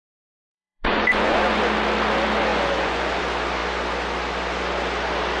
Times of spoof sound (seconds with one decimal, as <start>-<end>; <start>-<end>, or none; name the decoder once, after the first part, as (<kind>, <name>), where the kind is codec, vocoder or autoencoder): 0.5-1.6 (vocoder, Vocos); 2.5-3.2